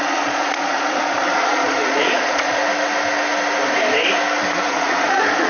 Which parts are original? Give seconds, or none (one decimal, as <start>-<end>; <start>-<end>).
2.6-4.7